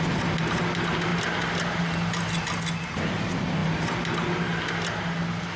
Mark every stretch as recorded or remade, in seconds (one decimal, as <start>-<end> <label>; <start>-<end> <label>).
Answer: 0.0-5.6 recorded